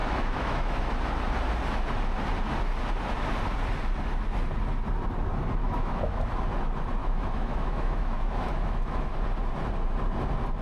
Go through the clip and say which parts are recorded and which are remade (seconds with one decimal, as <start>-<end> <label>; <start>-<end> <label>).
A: 0.0-0.8 remade; 0.8-5.6 recorded; 5.6-6.4 remade; 6.4-7.0 recorded; 7.0-9.1 remade; 9.1-10.6 recorded